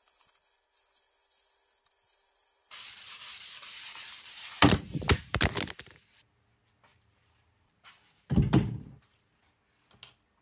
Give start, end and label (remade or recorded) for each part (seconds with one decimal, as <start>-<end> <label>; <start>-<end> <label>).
0.0-2.4 recorded; 2.4-5.4 remade; 5.4-6.9 recorded; 6.9-9.4 remade; 9.4-10.4 recorded